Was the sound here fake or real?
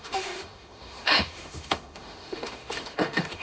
fake